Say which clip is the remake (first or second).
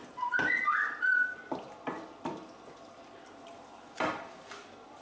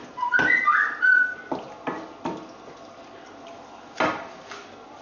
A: first